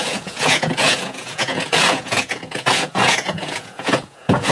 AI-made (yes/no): yes